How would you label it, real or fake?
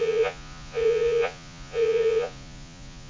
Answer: fake